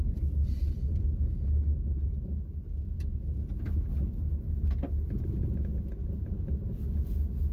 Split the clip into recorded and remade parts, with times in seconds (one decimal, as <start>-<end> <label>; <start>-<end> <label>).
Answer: 0.0-7.5 recorded